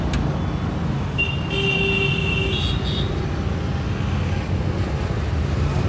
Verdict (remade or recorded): recorded